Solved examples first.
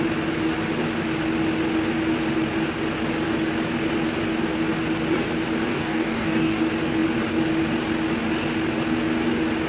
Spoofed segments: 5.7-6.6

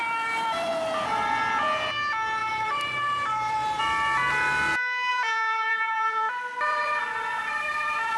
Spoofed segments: 0.0-0.7; 2.4-3.8; 5.1-8.2

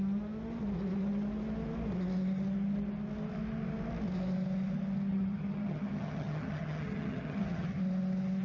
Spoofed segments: 5.1-7.8

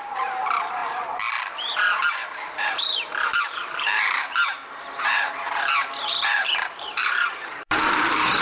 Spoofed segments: 0.0-0.8; 1.5-8.4

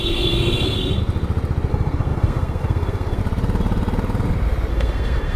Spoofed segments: 0.0-1.0; 1.7-3.2; 4.7-5.4

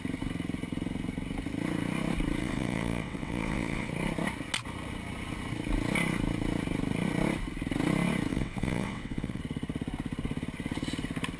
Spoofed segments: 2.4-3.9; 8.3-9.4